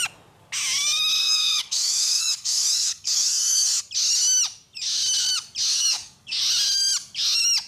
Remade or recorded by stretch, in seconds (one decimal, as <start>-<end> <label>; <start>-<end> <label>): 0.0-1.2 recorded; 1.2-3.8 remade; 3.8-5.7 recorded; 5.7-6.4 remade; 6.4-7.7 recorded